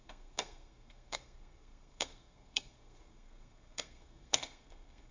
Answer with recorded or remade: remade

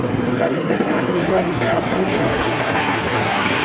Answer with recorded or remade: remade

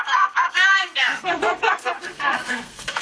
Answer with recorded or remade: remade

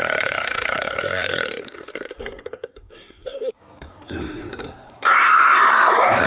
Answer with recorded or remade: remade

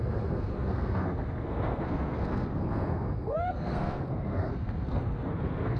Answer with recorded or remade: remade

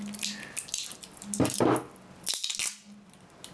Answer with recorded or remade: recorded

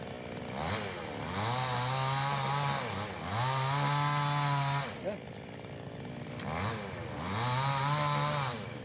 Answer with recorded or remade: recorded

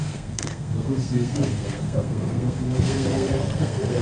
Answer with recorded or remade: remade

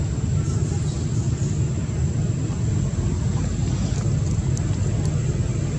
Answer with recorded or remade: recorded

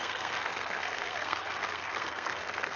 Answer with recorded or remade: remade